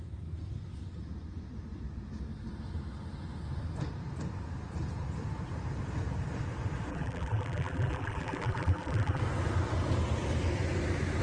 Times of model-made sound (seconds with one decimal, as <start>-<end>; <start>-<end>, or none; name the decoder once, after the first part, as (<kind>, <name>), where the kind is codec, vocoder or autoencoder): 6.9-9.2 (vocoder, BigVGAN v2)